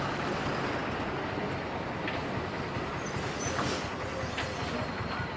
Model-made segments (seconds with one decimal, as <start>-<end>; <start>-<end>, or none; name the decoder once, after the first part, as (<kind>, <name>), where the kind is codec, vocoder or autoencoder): none